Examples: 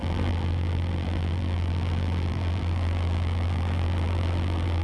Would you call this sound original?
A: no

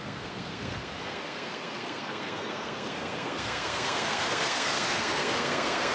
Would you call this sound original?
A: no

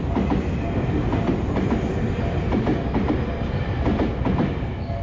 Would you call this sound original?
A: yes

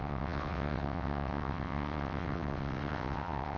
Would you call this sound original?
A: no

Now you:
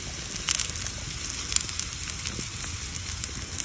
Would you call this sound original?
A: yes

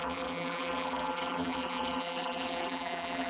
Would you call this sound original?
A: no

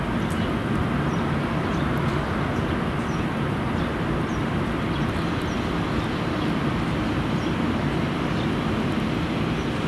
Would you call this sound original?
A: yes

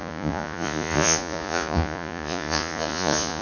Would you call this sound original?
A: no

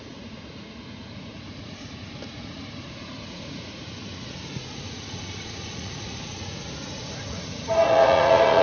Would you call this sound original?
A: no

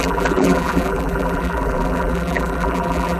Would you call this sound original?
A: no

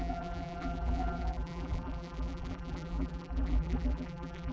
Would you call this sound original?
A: no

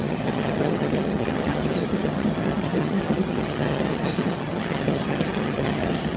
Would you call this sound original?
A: no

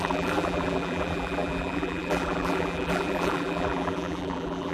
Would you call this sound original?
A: no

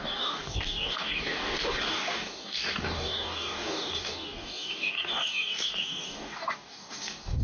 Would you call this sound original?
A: no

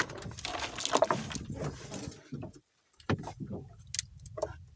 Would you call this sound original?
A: yes